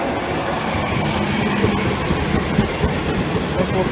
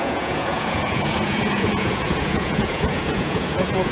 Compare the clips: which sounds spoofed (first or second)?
second